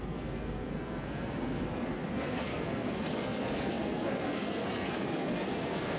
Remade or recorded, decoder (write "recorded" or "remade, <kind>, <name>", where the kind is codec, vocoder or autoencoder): remade, codec, SNAC